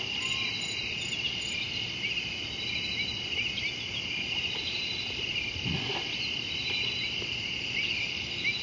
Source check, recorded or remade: recorded